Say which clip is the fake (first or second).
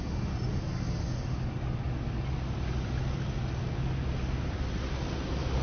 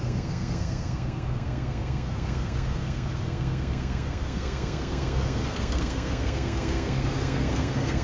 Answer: second